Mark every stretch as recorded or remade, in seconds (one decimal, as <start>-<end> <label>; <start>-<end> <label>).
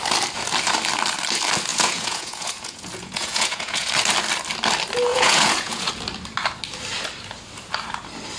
0.0-1.7 recorded; 1.7-3.9 remade; 3.9-5.1 recorded; 5.1-5.9 remade; 5.9-8.4 recorded